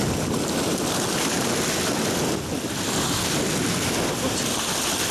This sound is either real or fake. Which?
real